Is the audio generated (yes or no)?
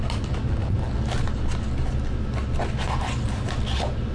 no